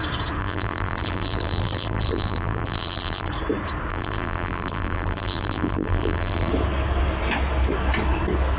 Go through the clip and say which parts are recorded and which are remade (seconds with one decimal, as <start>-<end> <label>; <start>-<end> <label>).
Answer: 0.0-0.4 recorded; 0.4-3.3 remade; 3.3-3.9 recorded; 3.9-6.5 remade; 6.5-8.6 recorded